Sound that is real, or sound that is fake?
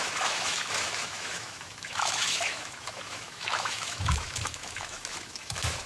fake